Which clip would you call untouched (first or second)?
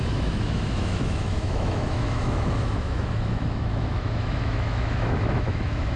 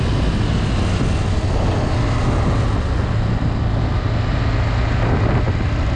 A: second